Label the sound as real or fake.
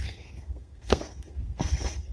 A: fake